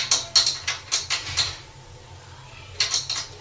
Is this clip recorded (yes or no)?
yes